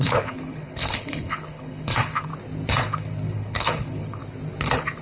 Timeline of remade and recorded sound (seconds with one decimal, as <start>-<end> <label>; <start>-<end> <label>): 0.0-2.3 remade; 2.3-2.9 recorded; 2.9-4.2 remade; 4.2-5.0 recorded